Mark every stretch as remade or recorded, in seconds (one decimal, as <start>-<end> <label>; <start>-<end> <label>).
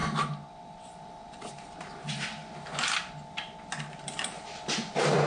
0.0-0.6 recorded; 0.6-2.4 remade; 2.4-3.9 recorded; 3.9-5.3 remade